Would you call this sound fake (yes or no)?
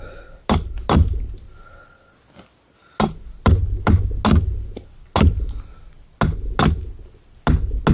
no